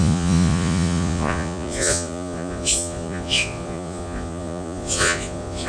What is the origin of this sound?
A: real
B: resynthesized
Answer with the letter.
B